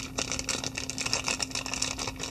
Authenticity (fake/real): real